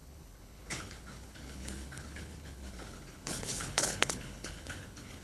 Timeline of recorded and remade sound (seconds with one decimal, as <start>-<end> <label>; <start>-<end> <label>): 0.0-5.2 remade